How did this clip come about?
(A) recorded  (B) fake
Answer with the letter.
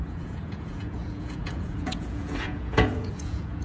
B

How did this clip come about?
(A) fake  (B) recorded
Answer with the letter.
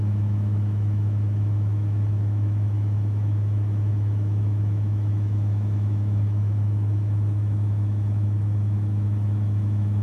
A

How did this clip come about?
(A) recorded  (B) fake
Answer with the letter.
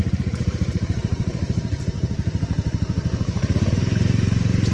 B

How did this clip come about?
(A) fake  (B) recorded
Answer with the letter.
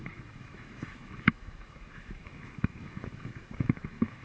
A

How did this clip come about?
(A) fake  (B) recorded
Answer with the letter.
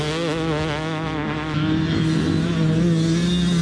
B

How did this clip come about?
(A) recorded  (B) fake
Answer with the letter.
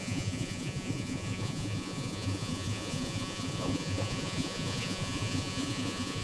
B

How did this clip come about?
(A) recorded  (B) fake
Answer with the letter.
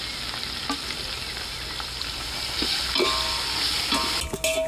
A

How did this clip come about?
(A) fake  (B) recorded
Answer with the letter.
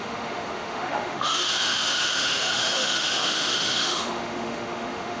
A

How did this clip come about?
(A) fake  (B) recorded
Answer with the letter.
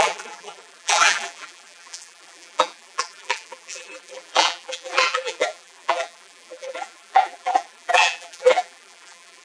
A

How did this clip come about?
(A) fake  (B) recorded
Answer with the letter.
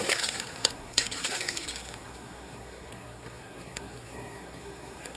A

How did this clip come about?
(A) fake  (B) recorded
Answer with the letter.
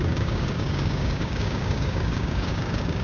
A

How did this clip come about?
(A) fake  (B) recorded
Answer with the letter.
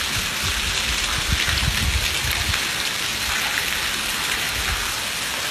B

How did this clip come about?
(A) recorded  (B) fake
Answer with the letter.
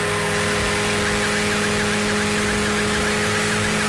A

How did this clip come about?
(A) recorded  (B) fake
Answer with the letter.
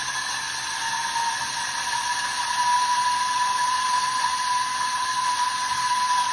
A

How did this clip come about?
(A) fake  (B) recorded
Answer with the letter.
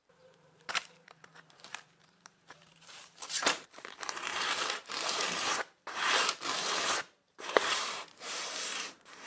A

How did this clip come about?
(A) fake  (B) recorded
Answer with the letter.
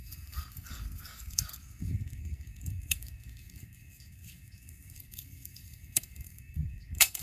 A